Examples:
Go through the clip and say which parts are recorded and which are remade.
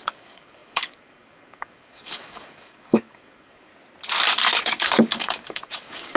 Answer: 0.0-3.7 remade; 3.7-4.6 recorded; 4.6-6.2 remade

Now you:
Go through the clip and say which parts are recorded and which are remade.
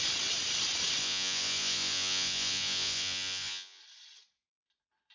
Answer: 0.0-1.0 recorded; 1.0-3.8 remade; 3.8-5.1 recorded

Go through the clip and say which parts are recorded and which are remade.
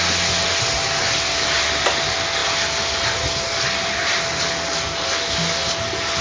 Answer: 0.0-6.2 recorded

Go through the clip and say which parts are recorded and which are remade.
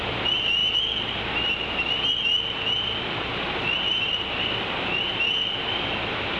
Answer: 0.0-6.4 remade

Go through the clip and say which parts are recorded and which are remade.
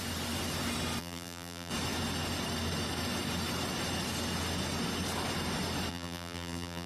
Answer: 0.0-1.0 recorded; 1.0-1.7 remade; 1.7-5.9 recorded; 5.9-6.9 remade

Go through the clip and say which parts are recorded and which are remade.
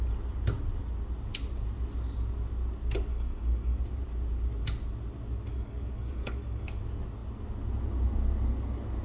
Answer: 0.0-3.1 recorded; 3.1-3.8 remade; 3.8-5.5 recorded; 5.5-6.8 remade; 6.8-9.0 recorded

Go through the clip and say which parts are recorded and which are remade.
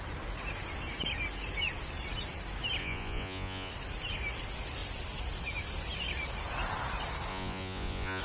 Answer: 0.0-2.8 recorded; 2.8-3.7 remade; 3.7-7.3 recorded; 7.3-8.2 remade